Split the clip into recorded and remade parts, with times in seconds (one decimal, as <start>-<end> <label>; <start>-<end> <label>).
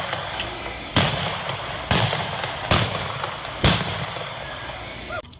0.0-0.9 remade; 0.9-4.1 recorded; 4.1-5.4 remade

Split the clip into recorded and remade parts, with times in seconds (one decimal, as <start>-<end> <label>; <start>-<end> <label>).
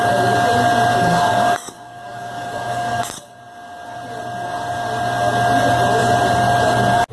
0.0-0.9 recorded; 0.9-3.4 remade; 3.4-7.1 recorded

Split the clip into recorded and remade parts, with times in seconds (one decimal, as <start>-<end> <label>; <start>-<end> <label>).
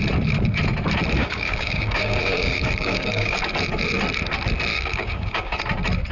0.0-1.2 recorded; 1.2-3.4 remade; 3.4-4.7 recorded; 4.7-5.6 remade; 5.6-6.1 recorded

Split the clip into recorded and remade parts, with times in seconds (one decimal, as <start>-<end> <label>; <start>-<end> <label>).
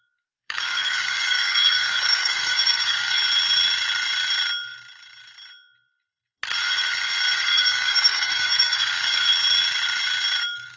0.0-3.2 remade; 3.2-7.3 recorded; 7.3-9.3 remade; 9.3-10.4 recorded; 10.4-10.8 remade